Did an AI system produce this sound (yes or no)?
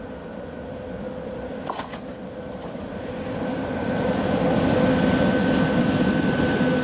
no